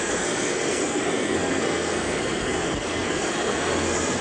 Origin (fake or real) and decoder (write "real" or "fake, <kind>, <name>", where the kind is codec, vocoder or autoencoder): fake, codec, SNAC